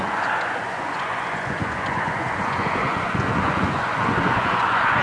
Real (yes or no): no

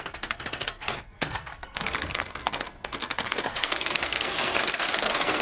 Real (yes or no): no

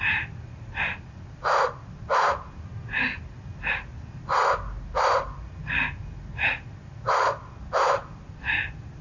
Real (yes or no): yes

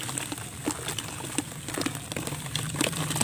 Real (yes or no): yes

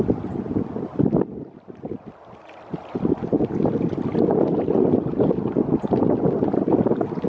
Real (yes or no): yes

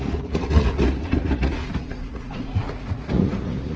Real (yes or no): no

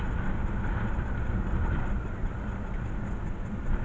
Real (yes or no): yes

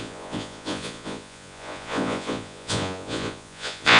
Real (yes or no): no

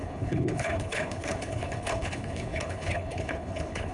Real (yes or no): no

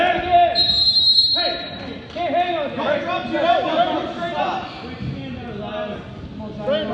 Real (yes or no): yes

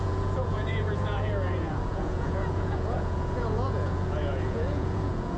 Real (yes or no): no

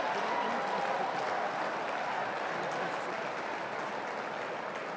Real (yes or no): yes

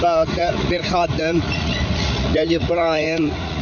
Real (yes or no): no